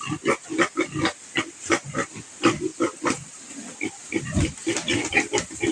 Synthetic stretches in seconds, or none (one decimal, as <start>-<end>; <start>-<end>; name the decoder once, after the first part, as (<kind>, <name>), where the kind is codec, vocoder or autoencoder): none